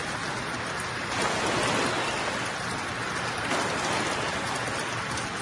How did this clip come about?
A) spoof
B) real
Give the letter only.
B